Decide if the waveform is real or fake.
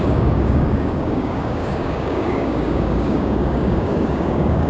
fake